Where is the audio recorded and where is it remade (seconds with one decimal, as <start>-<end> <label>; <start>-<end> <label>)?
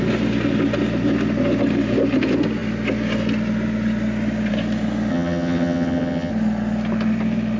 0.0-5.1 recorded; 5.1-6.3 remade; 6.3-7.6 recorded